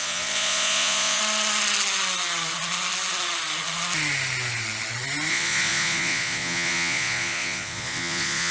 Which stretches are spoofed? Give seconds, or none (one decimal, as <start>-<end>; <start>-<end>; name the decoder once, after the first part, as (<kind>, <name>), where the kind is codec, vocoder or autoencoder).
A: 0.0-1.2 (vocoder, Vocos); 5.3-8.5